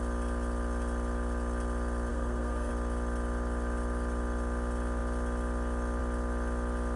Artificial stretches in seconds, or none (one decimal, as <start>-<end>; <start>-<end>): 2.1-2.7

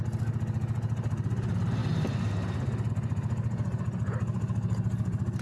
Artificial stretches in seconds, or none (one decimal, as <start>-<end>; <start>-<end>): none

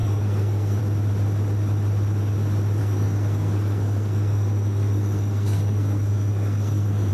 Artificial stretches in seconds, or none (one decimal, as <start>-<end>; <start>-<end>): 0.0-0.8; 2.8-7.1